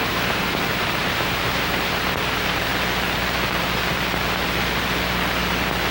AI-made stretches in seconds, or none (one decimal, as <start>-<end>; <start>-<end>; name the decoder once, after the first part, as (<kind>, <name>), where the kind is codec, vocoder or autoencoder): 0.0-2.7 (vocoder, BigVGAN v2)